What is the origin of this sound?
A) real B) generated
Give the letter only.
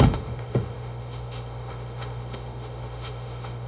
B